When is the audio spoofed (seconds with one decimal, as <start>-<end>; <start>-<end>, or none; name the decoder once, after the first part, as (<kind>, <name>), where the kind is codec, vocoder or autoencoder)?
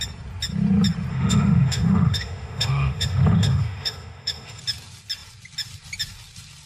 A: 1.1-4.6 (autoencoder, DAC-VAE)